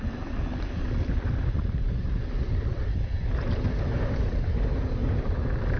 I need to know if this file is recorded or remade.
recorded